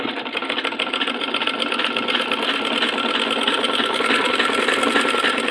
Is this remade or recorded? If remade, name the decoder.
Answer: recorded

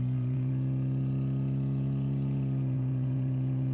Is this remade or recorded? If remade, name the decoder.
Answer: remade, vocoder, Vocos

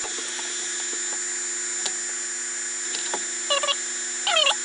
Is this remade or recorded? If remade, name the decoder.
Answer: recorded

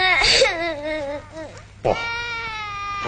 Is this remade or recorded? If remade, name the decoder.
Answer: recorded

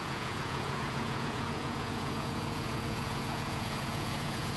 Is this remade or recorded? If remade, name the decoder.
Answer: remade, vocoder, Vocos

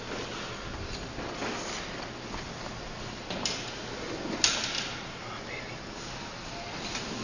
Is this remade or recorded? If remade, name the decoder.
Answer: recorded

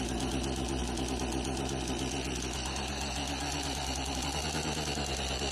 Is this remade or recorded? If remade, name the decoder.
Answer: recorded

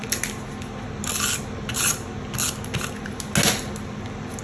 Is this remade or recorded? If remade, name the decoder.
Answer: recorded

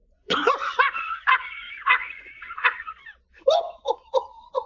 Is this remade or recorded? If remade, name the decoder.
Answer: remade, vocoder, Vocos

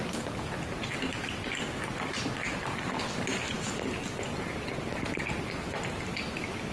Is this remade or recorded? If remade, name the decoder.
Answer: recorded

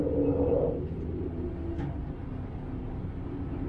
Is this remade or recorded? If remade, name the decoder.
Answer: recorded